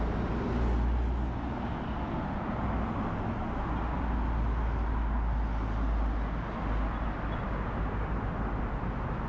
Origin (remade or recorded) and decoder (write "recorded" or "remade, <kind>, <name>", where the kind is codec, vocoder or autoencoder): recorded